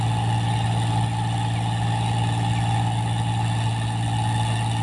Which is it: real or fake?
real